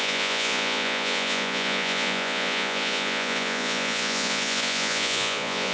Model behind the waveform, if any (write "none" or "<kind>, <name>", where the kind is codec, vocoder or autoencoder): vocoder, Vocos